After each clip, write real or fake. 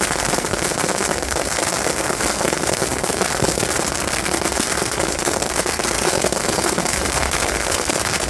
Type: fake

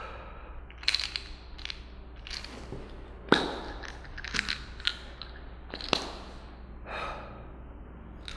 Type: real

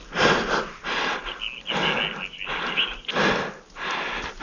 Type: real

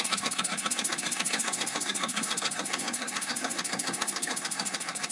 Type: fake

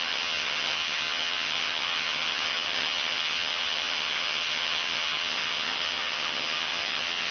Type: fake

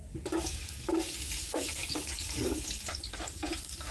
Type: fake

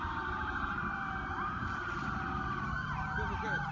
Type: real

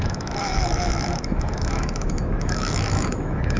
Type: fake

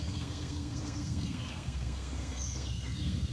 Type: fake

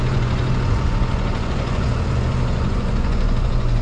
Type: fake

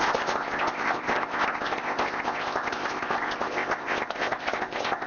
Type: fake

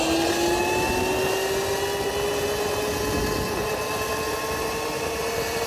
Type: real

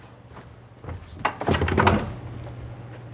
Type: real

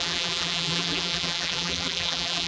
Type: fake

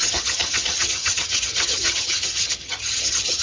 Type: fake